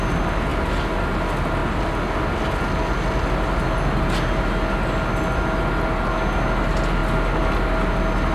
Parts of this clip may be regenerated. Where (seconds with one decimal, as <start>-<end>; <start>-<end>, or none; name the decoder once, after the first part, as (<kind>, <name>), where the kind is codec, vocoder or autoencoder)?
none